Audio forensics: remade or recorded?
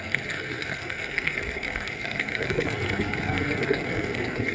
remade